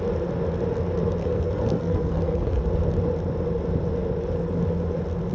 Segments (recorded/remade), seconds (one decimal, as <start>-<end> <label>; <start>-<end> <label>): 0.0-1.2 recorded; 1.2-2.6 remade; 2.6-5.3 recorded